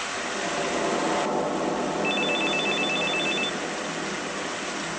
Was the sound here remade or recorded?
recorded